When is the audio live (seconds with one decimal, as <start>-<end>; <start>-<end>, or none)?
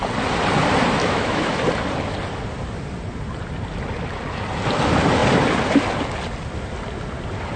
0.0-1.0; 1.6-7.6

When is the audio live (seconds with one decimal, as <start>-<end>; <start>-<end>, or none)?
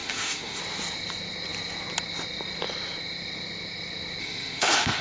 0.6-4.2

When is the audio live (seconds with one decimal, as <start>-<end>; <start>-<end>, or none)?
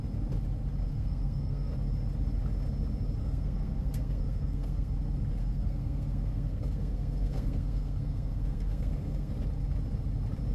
0.0-0.9; 1.7-3.2; 4.9-5.4; 9.3-10.5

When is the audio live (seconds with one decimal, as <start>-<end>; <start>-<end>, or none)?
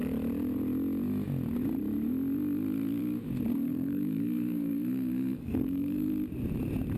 0.0-3.5; 6.1-7.0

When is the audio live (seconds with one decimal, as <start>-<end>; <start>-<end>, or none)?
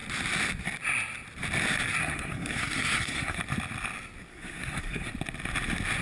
0.0-2.0; 3.4-4.3; 5.1-6.0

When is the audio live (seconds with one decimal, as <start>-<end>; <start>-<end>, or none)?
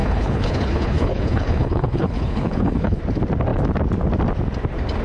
3.0-5.0